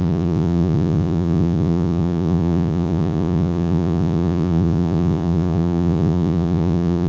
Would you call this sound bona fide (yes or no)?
no